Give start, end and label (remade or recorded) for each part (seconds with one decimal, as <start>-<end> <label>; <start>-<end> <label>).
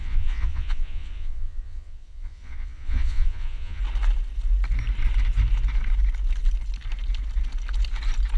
0.0-3.8 remade; 3.8-8.4 recorded